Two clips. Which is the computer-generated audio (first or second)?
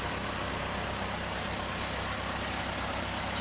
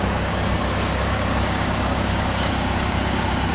second